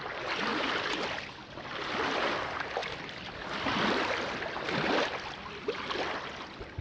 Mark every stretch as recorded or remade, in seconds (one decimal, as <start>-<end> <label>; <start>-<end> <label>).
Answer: 0.0-2.8 recorded; 2.8-6.8 remade